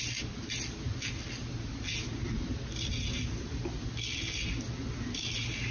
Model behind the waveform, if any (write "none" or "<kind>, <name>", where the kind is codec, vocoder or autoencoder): none